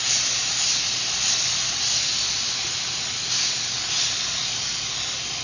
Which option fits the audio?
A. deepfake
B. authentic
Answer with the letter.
B